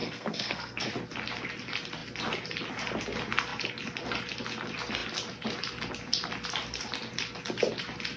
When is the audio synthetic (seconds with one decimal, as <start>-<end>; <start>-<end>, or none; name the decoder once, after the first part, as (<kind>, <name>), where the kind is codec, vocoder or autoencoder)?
0.0-0.9 (codec, SNAC)